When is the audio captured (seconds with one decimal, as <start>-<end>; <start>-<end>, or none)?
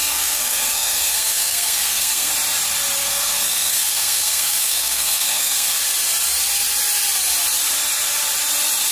2.3-3.0; 5.8-8.9